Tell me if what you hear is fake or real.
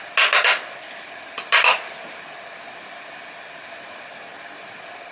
real